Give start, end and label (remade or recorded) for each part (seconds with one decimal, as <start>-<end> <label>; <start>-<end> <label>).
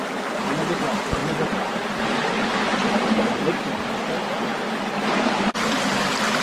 0.0-6.4 recorded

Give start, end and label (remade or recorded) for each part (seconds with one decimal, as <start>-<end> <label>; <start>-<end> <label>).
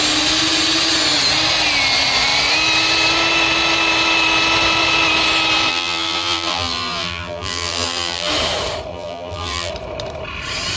0.0-5.7 recorded; 5.7-8.3 remade; 8.3-8.9 recorded; 8.9-9.7 remade; 9.7-10.8 recorded